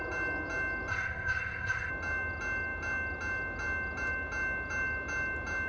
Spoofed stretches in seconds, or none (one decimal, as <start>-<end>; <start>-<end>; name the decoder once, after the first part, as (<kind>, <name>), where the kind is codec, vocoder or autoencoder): 0.9-1.9 (codec, ZipCodec)